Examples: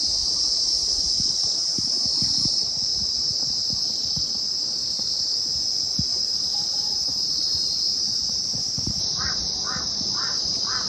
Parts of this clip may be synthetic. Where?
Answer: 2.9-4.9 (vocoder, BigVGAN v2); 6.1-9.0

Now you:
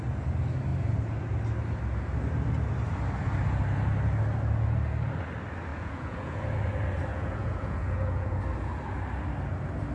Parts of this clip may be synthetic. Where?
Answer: 5.7-6.4 (vocoder, Vocos); 7.1-8.4

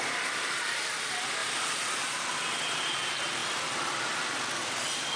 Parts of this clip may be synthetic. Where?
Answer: 1.4-2.0 (vocoder, BigVGAN v2); 3.4-4.0

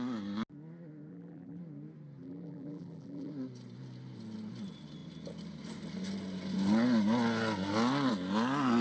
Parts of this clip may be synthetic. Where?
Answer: 1.1-1.6 (vocoder, BigVGAN v2); 2.2-3.3

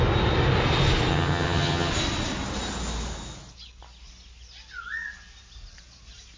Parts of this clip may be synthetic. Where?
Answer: 1.1-1.9 (vocoder, HiFi-GAN)

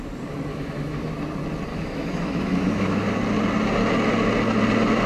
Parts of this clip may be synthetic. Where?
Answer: 0.5-1.1 (autoencoder, DAC-VAE); 1.7-3.1

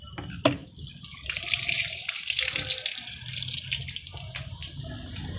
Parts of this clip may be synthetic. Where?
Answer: none